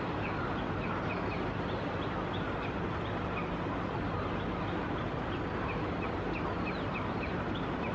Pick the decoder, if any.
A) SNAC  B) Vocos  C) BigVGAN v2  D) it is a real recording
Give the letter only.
D